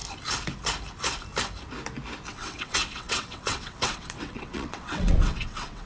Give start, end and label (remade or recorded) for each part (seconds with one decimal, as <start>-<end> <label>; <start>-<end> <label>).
0.0-2.3 recorded; 2.3-5.9 remade